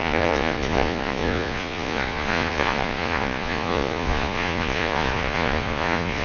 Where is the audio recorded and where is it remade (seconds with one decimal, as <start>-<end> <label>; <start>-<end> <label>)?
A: 0.0-6.2 remade